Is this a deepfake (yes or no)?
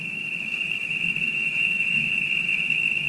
yes